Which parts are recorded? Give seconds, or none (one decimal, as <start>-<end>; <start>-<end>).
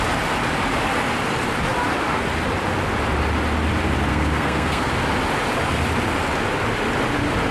0.0-4.1; 4.9-7.5